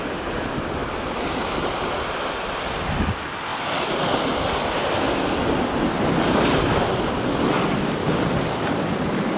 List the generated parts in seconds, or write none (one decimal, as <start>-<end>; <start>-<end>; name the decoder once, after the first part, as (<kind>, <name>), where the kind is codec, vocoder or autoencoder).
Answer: none